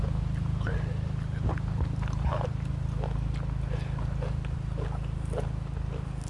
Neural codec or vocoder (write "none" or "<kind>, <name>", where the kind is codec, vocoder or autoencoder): none